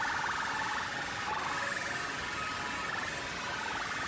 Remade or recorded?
recorded